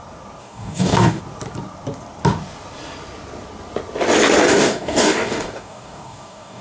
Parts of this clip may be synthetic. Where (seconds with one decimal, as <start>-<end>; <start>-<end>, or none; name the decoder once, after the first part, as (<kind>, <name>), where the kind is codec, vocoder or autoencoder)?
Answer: 0.4-1.2 (codec, DAC); 4.5-6.6